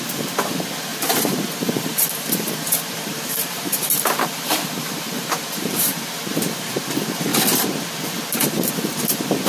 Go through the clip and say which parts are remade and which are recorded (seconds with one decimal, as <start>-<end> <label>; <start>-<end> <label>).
0.0-0.9 recorded; 0.9-6.1 remade; 6.1-9.5 recorded